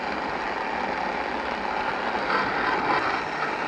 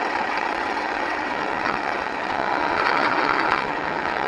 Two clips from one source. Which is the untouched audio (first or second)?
first